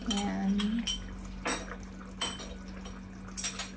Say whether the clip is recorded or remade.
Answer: recorded